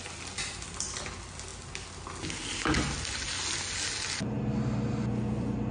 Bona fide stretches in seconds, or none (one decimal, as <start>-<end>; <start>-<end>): 0.0-5.7